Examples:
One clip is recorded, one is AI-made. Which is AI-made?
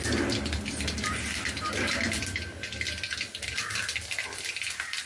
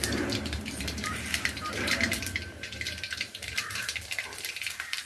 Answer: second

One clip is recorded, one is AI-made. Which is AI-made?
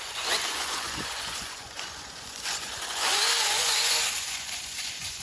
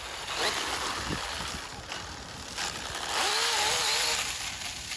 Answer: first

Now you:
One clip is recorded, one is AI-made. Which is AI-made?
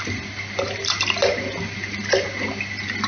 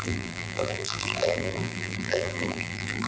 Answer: second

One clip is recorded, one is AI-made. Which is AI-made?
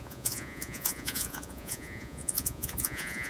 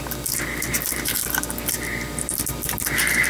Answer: first